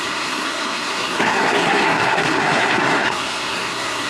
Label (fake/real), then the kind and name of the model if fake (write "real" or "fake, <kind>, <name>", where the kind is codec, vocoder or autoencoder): fake, codec, SNAC